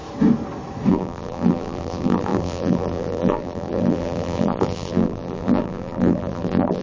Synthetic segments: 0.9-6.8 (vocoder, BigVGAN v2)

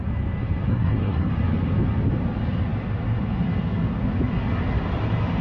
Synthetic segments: 0.7-1.3 (codec, SNAC)

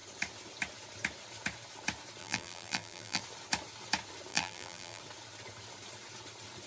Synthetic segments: 2.2-3.2 (vocoder, BigVGAN v2); 4.3-5.0

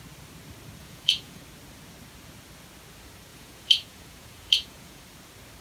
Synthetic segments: 0.8-1.4 (vocoder, Vocos); 3.3-5.0

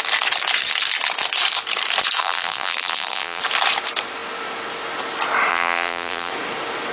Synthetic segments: 2.2-3.4 (vocoder, BigVGAN v2); 5.5-6.3

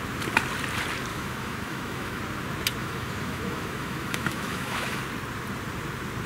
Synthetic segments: 1.1-2.2 (autoencoder, DAC-VAE); 2.8-5.0

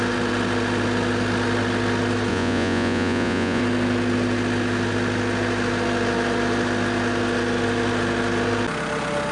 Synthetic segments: 2.3-3.6 (vocoder, Vocos)